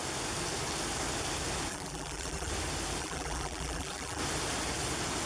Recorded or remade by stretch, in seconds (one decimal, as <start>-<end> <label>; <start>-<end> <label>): 0.0-1.7 recorded; 1.7-2.5 remade; 2.5-3.0 recorded; 3.0-4.2 remade; 4.2-5.3 recorded